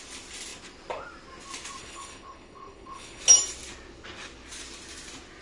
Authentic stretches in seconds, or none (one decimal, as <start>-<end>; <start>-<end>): 0.0-1.8; 3.2-5.4